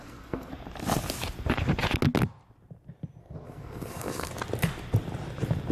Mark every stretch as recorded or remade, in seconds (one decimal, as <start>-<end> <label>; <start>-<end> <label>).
0.0-0.5 remade; 0.5-3.2 recorded; 3.2-4.3 remade; 4.3-5.7 recorded